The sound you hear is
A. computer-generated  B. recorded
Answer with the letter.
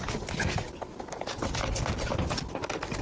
B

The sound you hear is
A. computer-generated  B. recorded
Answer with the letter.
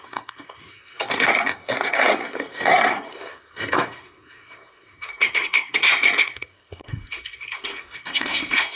A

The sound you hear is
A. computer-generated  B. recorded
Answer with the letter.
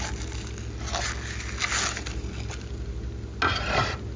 B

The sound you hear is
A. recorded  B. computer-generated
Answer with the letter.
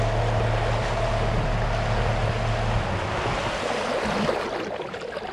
A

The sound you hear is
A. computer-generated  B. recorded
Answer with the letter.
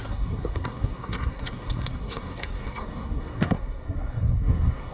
A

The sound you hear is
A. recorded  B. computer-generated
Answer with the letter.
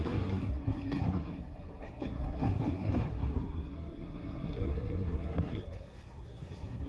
B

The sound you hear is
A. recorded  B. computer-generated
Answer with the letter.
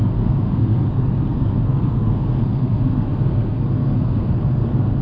B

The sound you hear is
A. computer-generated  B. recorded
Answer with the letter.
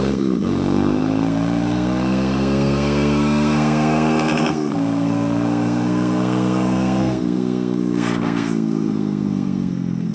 A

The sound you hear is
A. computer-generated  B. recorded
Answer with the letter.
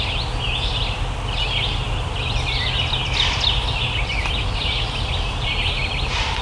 B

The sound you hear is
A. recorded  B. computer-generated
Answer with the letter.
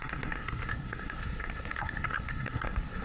B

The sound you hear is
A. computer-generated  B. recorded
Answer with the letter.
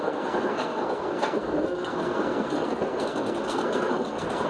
A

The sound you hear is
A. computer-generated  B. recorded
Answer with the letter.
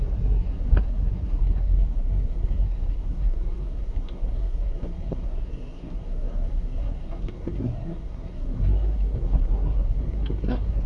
A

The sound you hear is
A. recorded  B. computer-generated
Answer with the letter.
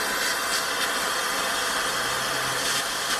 A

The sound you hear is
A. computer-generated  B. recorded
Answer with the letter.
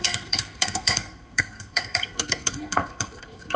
A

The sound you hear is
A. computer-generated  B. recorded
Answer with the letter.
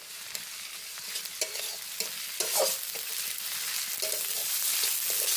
B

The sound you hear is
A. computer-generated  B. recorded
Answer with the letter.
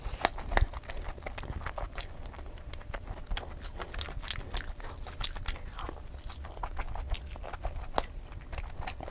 B